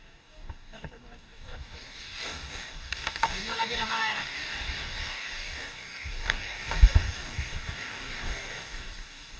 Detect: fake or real fake